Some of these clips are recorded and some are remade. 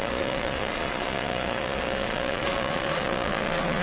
remade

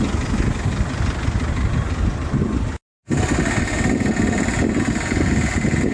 recorded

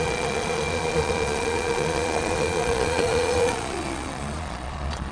remade